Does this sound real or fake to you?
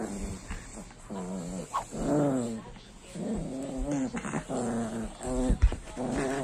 real